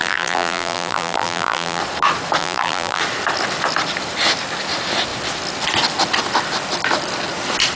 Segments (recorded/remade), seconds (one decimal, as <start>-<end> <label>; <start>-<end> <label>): 0.0-1.8 remade; 1.8-2.4 recorded; 2.4-3.0 remade; 3.0-7.8 recorded